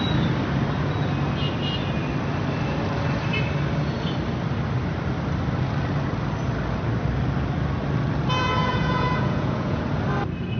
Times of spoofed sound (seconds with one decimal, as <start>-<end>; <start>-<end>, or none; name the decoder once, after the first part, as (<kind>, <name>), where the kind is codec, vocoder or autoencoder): 8.6-9.8 (vocoder, Vocos)